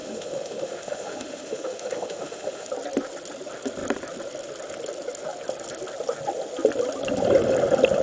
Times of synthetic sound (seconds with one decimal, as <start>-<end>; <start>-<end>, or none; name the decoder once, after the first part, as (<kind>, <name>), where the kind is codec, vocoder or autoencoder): 0.0-2.7 (autoencoder, DAC-VAE)